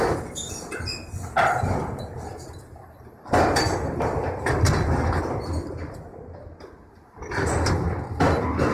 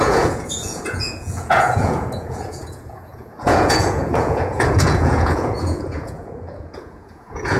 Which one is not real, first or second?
second